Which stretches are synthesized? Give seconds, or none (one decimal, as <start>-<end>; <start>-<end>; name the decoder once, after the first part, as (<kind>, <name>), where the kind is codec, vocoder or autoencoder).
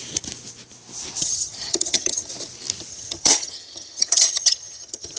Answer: 1.2-2.3 (vocoder, HiFi-GAN); 2.9-5.2